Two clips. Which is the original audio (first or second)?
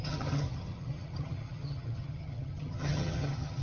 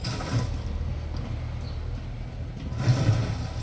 second